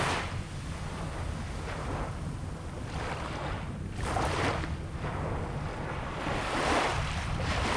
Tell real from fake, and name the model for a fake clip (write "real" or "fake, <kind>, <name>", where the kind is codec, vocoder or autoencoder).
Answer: real